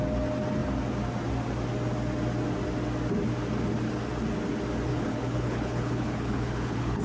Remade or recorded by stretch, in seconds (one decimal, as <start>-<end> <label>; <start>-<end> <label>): 0.0-4.9 recorded; 4.9-7.0 remade